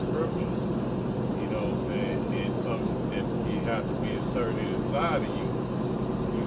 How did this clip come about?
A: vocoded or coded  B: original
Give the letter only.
B